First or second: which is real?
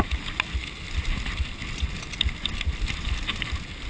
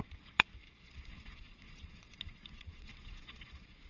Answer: first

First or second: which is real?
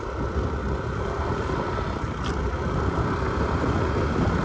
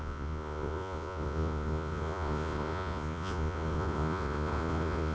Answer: first